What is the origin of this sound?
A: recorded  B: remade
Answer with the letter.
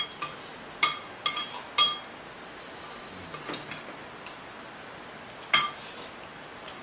A